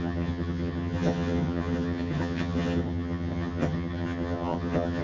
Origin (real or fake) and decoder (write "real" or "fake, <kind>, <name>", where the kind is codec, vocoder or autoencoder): fake, vocoder, HiFi-GAN